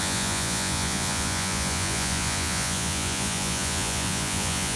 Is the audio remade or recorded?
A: remade